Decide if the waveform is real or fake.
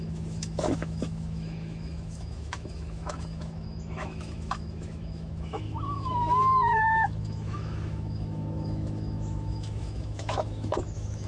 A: fake